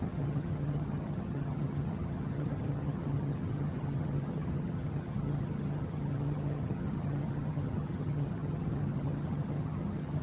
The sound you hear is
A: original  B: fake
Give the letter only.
B